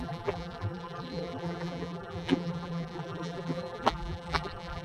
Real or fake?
fake